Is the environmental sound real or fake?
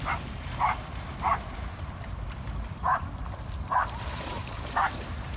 fake